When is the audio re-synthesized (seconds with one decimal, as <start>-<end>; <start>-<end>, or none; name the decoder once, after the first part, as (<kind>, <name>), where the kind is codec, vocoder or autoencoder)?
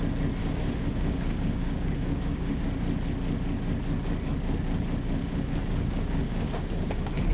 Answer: 0.4-2.6 (codec, DAC); 5.2-7.3